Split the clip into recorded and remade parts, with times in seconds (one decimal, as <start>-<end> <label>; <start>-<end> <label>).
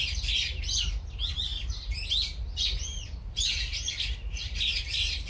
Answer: 0.0-5.3 recorded